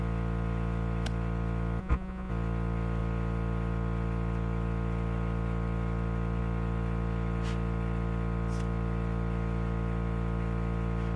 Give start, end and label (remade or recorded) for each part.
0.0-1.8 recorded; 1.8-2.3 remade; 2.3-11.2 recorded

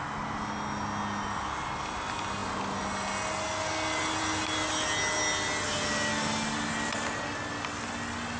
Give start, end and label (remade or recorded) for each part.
0.0-8.4 recorded

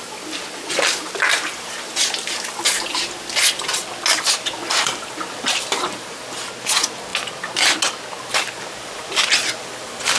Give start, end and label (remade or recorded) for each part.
0.0-10.2 recorded

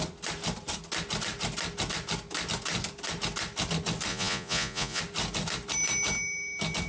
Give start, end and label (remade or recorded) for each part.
0.0-4.1 recorded; 4.1-5.0 remade; 5.0-6.9 recorded

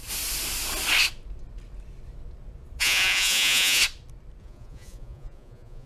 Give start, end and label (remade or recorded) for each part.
0.0-2.8 recorded; 2.8-3.8 remade; 3.8-4.4 recorded; 4.4-5.9 remade

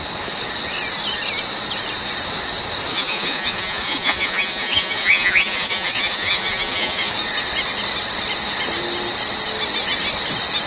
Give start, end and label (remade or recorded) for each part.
0.0-2.9 recorded; 2.9-7.1 remade; 7.1-10.7 recorded